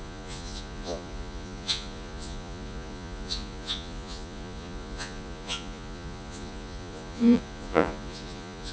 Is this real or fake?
fake